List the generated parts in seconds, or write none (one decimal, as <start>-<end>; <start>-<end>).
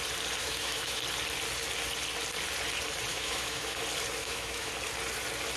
0.4-1.0; 3.1-3.8; 4.2-4.7